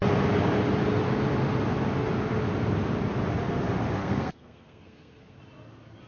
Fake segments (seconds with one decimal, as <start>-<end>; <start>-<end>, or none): 4.0-5.4